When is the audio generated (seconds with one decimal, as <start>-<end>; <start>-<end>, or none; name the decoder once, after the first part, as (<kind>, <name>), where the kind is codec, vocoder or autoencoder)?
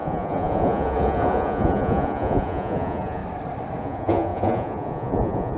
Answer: 0.0-3.2 (vocoder, Vocos); 3.8-5.6